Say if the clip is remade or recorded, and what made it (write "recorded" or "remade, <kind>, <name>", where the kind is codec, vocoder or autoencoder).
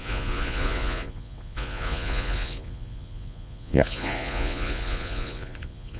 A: remade, vocoder, Vocos